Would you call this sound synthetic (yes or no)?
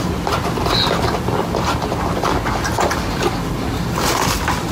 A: no